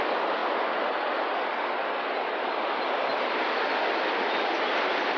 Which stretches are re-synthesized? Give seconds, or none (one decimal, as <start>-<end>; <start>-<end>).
none